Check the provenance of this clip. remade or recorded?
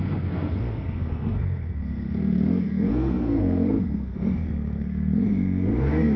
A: remade